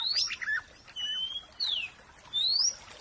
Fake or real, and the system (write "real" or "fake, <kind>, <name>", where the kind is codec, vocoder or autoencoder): real